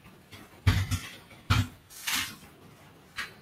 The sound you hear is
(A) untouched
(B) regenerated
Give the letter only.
A